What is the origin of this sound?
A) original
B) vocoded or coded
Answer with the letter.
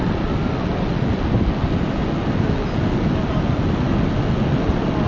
A